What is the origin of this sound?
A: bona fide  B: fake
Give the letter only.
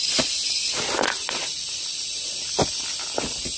A